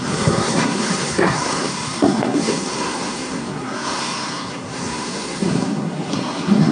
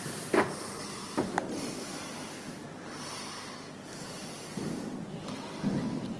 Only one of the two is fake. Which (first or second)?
first